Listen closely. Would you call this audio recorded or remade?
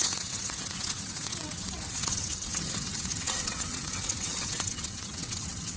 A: remade